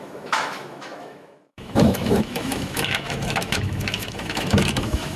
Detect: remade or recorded remade